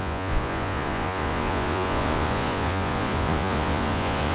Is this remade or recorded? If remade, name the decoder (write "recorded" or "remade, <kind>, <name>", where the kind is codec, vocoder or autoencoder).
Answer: remade, vocoder, Vocos